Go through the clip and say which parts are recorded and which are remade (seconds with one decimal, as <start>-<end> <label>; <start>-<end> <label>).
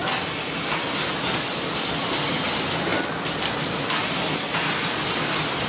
0.0-5.7 recorded